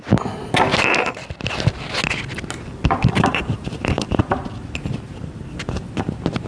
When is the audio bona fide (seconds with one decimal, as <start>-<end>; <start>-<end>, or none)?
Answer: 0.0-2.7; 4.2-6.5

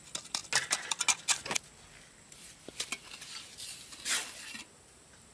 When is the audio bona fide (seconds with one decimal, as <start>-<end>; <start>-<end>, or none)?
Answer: 0.0-5.3

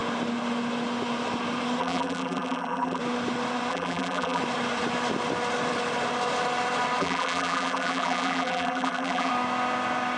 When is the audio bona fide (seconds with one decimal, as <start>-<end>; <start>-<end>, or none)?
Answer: 0.0-1.8; 3.0-3.7; 4.4-7.0; 9.3-10.2

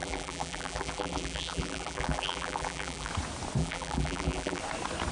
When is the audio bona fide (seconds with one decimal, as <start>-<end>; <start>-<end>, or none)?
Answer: 3.1-3.6; 4.6-5.1

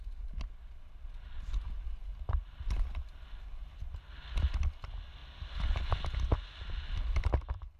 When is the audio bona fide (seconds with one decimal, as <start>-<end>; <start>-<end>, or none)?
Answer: 0.0-7.8

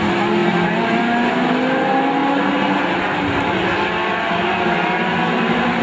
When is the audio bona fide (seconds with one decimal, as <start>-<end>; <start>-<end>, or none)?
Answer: 0.0-0.4; 1.0-5.8

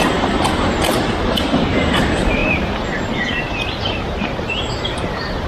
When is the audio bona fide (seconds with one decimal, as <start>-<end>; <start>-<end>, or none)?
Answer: none

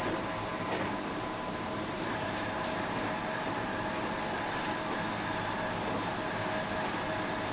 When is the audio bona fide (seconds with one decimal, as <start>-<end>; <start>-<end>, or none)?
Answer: 0.0-0.5; 4.4-7.5